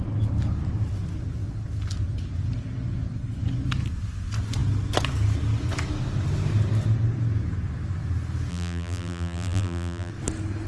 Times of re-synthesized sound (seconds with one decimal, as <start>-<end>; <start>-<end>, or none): 8.5-10.1